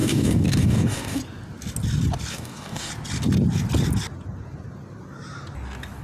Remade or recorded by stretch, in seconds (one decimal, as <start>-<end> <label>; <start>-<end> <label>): 0.0-1.2 remade; 1.2-2.3 recorded; 2.3-2.9 remade; 2.9-6.0 recorded